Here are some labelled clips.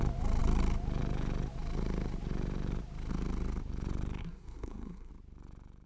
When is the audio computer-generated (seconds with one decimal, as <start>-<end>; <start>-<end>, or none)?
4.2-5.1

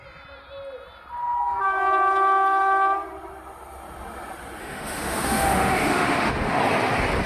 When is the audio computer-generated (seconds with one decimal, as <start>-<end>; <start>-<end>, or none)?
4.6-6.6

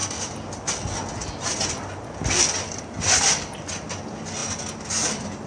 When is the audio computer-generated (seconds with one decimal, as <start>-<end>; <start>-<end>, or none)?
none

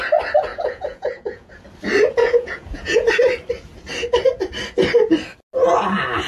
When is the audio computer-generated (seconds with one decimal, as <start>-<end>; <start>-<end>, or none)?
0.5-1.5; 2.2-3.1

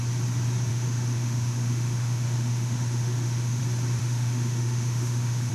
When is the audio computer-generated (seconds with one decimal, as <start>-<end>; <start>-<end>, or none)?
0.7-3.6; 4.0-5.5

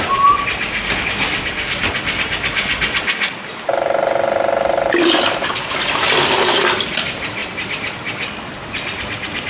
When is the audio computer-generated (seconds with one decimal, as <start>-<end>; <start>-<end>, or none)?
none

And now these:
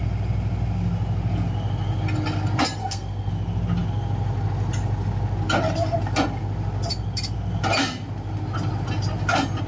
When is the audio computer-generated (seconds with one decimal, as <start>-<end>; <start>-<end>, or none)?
2.8-3.3

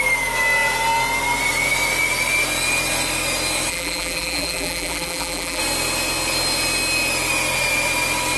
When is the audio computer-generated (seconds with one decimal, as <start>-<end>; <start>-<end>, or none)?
3.7-5.6